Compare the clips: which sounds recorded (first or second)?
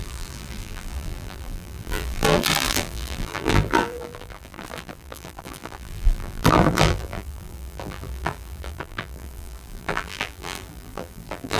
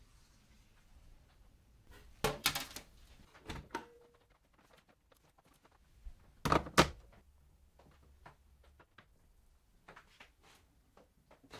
second